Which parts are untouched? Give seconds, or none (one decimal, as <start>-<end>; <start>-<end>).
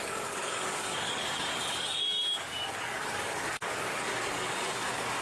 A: none